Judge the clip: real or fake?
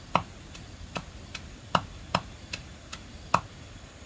real